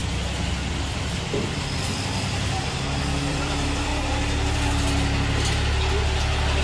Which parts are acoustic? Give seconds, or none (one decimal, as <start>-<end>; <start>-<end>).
3.9-6.6